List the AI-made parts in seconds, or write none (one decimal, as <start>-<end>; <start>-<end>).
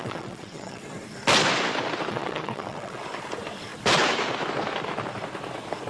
0.0-0.8; 2.1-3.0